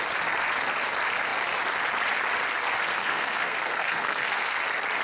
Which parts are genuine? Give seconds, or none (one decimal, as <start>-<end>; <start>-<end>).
0.0-2.9; 4.6-5.0